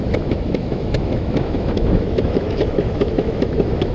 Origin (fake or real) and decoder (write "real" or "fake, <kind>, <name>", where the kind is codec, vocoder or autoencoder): fake, autoencoder, DAC-VAE